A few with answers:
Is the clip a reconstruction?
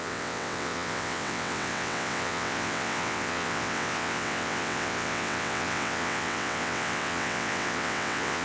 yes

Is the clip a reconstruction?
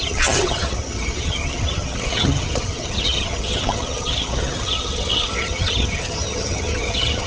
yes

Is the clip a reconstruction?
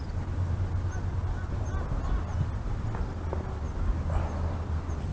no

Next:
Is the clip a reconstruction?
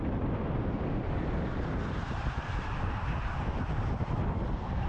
yes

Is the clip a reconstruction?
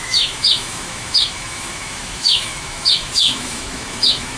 yes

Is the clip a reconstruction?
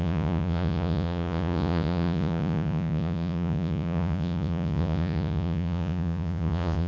yes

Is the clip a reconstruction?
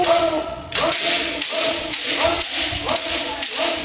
yes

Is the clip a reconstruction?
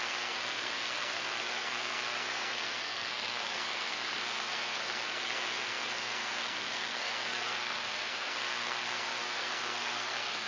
yes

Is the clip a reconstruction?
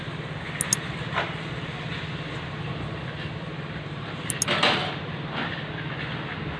no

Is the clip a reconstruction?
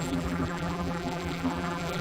yes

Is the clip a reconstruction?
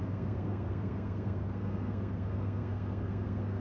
yes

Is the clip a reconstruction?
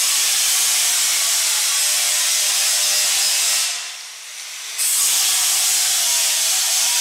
yes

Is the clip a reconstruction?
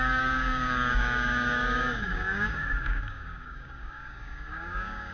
yes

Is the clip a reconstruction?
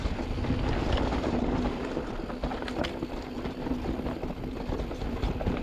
no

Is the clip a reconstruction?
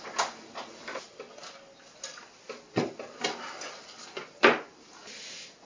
no